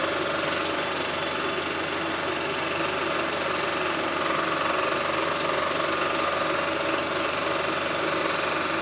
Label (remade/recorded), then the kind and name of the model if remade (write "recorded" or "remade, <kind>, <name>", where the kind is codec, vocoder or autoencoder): recorded